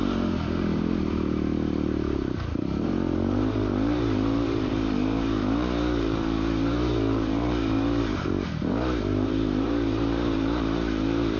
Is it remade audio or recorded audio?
remade